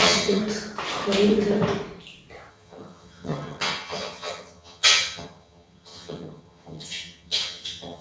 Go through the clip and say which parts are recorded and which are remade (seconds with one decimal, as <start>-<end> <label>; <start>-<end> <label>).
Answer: 0.0-0.4 remade; 0.4-2.5 recorded; 2.5-8.0 remade